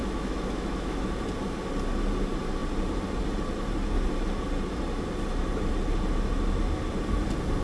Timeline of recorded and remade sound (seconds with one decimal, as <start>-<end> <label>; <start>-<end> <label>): 0.0-1.1 remade; 1.1-7.6 recorded